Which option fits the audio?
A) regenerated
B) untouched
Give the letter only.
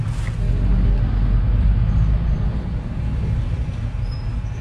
B